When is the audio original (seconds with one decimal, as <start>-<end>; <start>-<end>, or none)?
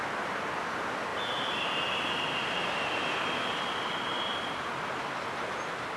0.0-6.0